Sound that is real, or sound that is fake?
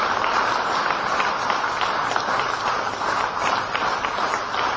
real